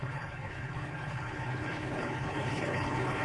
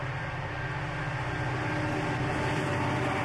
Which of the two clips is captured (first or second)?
second